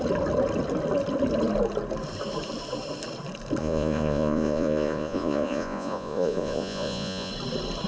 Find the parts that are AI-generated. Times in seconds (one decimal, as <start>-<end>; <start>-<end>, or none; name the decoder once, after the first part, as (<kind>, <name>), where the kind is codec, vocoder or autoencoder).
3.6-7.3 (vocoder, Vocos)